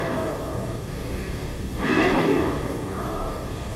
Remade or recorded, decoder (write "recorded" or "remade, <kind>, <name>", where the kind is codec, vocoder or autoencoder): remade, codec, DAC